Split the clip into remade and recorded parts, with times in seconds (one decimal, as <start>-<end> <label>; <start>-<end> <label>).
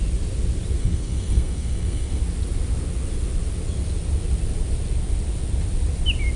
0.0-0.8 recorded; 0.8-2.2 remade; 2.2-6.4 recorded